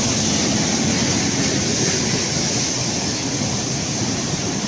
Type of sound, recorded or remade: recorded